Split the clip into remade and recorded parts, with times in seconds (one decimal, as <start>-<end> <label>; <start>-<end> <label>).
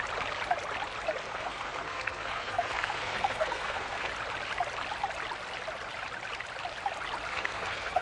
0.0-1.2 recorded; 1.2-4.1 remade; 4.1-7.3 recorded; 7.3-8.0 remade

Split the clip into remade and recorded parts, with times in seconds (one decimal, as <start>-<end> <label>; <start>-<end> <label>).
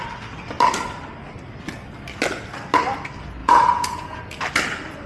0.0-3.4 recorded; 3.4-4.2 remade; 4.2-5.1 recorded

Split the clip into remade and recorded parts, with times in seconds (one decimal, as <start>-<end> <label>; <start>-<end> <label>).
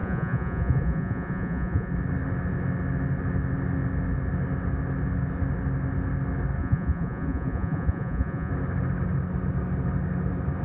0.0-1.9 remade; 1.9-6.6 recorded; 6.6-8.5 remade; 8.5-10.6 recorded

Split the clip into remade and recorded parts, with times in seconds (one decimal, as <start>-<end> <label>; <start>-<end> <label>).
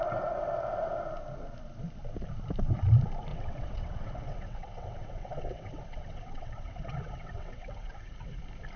0.0-3.3 recorded; 3.3-8.4 remade; 8.4-8.8 recorded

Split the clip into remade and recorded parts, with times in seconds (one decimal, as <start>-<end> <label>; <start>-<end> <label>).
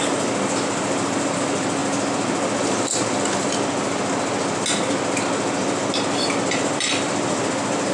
0.0-1.8 remade; 1.8-6.5 recorded; 6.5-7.9 remade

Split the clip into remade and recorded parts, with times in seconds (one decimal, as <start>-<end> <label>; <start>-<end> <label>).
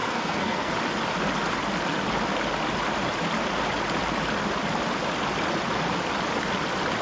0.0-0.7 remade; 0.7-7.0 recorded